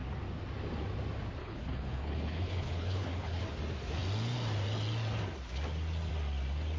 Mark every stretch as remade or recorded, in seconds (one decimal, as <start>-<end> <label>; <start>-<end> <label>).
0.0-1.4 recorded; 1.4-3.4 remade; 3.4-6.8 recorded